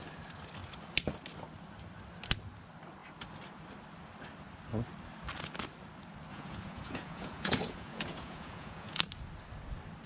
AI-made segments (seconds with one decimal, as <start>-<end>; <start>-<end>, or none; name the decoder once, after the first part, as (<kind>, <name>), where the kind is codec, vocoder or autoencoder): 6.3-9.0 (vocoder, Vocos)